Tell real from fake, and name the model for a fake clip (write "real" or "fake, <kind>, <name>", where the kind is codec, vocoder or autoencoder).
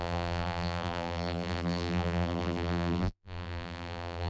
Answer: fake, vocoder, BigVGAN v2